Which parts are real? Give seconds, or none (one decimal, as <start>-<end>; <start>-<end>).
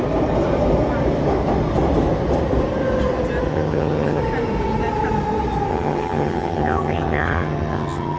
0.0-3.5; 4.2-5.7